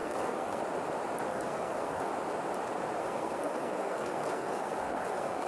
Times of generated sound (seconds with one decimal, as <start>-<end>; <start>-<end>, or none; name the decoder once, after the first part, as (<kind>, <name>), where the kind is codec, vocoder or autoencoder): 0.0-0.6 (codec, SNAC); 1.3-2.1; 3.0-5.5